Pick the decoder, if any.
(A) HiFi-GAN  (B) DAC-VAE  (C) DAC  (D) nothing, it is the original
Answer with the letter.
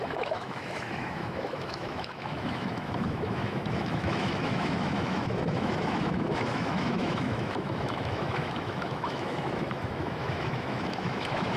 B